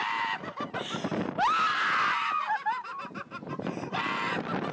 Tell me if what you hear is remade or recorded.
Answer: recorded